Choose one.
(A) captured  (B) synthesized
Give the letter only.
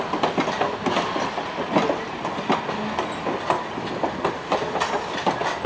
A